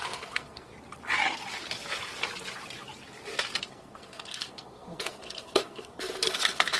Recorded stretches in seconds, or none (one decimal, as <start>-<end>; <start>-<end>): 0.7-3.6